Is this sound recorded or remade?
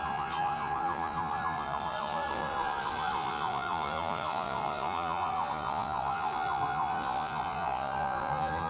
remade